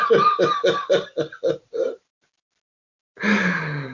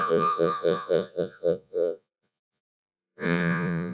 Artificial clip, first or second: second